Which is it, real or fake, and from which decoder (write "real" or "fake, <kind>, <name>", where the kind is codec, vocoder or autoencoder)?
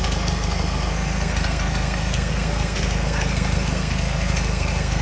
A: fake, codec, SNAC